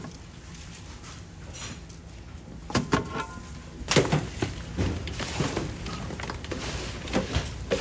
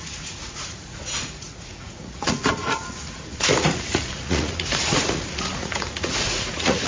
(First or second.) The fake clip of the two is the second